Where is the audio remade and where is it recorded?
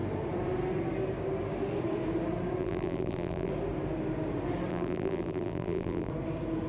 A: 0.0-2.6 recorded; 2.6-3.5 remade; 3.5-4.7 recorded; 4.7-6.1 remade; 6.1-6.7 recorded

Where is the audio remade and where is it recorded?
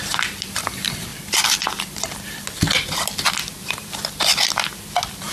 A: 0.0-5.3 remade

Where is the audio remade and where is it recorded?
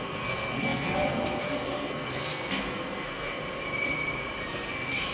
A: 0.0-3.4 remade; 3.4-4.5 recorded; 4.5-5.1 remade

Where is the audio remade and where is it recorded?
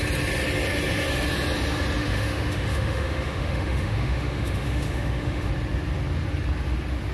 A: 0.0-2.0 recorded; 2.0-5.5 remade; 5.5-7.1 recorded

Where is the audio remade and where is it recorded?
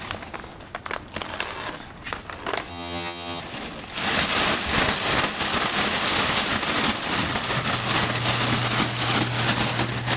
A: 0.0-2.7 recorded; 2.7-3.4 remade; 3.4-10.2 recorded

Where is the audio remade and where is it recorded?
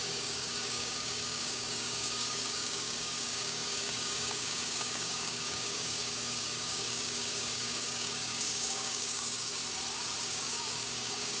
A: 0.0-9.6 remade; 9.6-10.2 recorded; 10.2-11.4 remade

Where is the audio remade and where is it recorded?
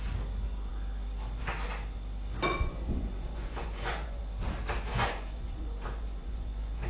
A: 0.0-2.5 recorded; 2.5-4.2 remade; 4.2-4.9 recorded; 4.9-6.9 remade